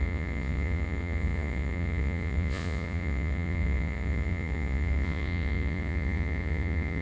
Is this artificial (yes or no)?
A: yes